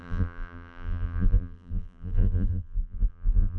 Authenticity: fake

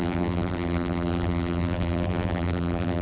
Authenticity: fake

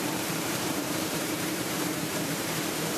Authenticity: fake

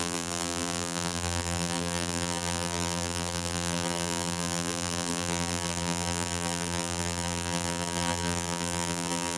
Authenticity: fake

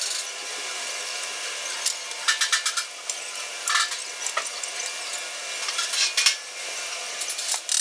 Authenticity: real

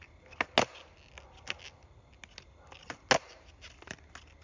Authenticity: real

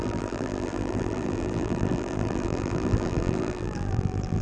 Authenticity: fake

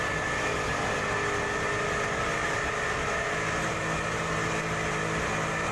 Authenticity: real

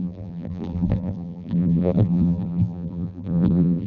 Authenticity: fake